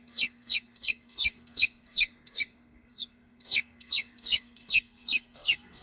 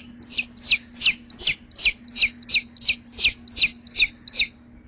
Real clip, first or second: second